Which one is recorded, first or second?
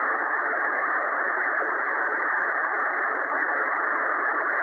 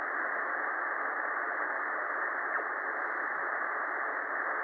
second